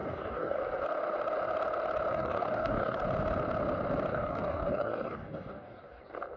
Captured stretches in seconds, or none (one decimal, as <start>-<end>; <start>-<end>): 0.6-2.1; 3.0-4.1; 6.0-6.4